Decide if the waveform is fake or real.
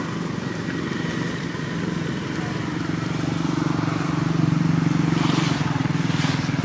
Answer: real